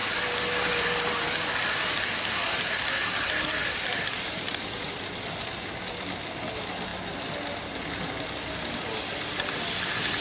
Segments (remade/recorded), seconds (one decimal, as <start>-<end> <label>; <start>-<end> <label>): 0.0-10.2 recorded

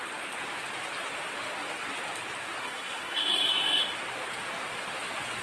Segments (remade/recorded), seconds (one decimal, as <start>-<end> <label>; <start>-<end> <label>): 0.0-2.6 recorded; 2.6-3.8 remade; 3.8-5.4 recorded

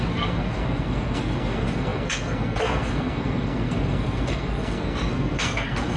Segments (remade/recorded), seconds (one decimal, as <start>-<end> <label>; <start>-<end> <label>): 0.0-6.0 remade

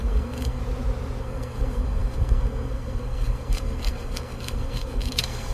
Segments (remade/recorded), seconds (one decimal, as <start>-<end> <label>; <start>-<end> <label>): 0.0-0.6 remade; 0.6-1.2 recorded; 1.2-5.5 remade

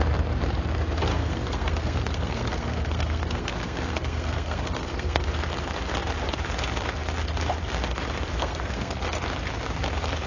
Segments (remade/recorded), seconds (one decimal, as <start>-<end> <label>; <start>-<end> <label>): 0.0-1.1 recorded; 1.1-5.3 remade; 5.3-8.3 recorded; 8.3-9.1 remade; 9.1-10.3 recorded